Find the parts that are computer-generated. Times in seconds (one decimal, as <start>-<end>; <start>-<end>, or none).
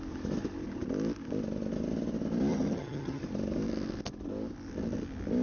2.5-3.2